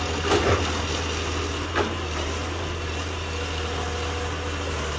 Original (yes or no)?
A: yes